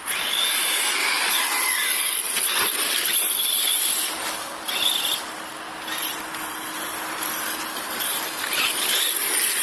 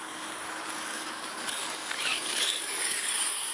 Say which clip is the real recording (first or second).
first